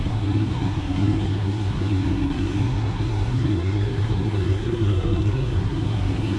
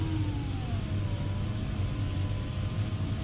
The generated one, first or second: first